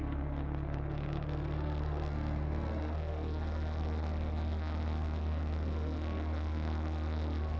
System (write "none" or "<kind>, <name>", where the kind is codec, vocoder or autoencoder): codec, SNAC